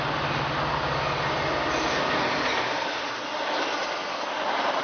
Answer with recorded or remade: recorded